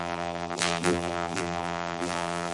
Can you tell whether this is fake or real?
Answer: fake